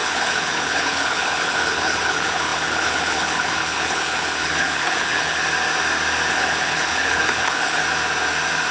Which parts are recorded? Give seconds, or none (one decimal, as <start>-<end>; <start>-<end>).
5.4-6.3; 7.8-8.7